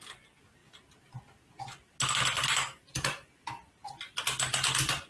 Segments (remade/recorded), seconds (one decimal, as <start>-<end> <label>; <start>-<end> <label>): 0.0-5.1 recorded